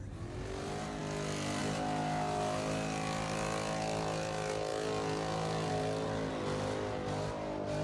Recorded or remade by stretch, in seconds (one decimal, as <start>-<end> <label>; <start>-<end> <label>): 0.0-7.8 recorded